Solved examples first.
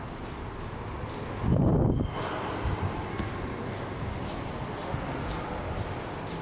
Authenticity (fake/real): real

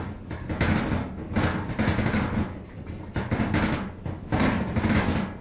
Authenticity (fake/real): real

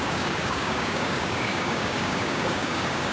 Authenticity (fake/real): fake